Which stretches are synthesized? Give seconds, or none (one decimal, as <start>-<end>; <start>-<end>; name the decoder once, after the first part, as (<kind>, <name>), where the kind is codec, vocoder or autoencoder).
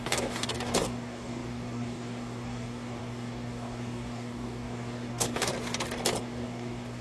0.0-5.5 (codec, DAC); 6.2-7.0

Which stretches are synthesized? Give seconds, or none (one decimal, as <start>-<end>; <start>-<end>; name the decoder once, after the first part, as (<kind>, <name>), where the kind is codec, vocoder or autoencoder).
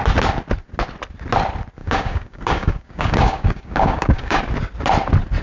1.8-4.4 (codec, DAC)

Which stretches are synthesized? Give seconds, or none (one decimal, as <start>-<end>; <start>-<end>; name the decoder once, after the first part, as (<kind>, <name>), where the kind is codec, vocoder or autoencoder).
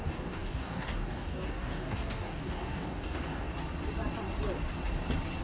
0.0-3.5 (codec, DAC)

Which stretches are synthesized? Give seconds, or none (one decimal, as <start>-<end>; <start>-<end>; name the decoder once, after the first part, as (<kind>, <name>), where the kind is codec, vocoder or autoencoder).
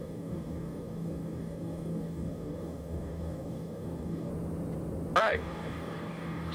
0.0-4.3 (codec, DAC); 5.2-6.5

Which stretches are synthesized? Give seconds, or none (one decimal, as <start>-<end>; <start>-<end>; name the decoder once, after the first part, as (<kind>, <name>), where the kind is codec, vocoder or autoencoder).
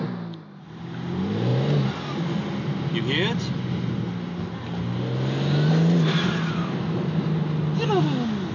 none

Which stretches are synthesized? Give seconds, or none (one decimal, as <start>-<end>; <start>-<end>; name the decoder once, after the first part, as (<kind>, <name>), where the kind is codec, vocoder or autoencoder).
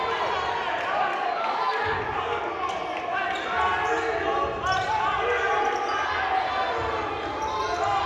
1.1-2.4 (codec, DAC)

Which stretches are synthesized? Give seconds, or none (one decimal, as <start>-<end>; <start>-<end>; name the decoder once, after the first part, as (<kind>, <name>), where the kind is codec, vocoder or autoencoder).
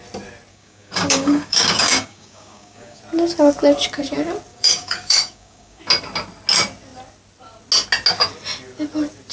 0.5-3.0 (codec, DAC); 4.5-5.8